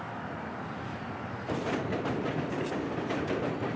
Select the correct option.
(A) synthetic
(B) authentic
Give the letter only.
B